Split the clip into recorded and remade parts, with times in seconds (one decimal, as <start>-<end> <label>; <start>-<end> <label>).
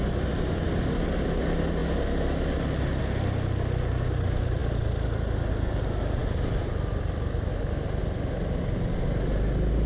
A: 0.0-9.9 recorded